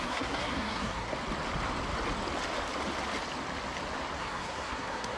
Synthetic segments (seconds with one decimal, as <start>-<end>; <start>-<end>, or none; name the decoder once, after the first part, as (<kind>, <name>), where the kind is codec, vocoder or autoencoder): 0.0-1.1 (codec, SNAC); 4.2-5.2

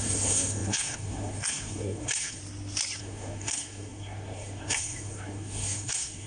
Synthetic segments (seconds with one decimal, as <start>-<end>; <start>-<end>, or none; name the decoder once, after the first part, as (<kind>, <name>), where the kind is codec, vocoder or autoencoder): 0.0-2.4 (codec, SNAC); 3.0-6.3